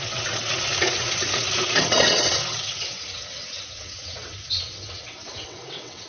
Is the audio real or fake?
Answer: fake